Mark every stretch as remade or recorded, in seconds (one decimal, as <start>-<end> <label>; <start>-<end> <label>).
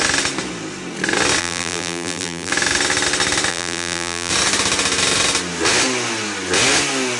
0.0-1.4 recorded; 1.4-2.5 remade; 2.5-3.5 recorded; 3.5-4.3 remade; 4.3-7.2 recorded